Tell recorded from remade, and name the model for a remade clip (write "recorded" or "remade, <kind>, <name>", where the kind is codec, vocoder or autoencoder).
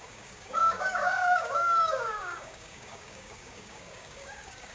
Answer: remade, codec, DAC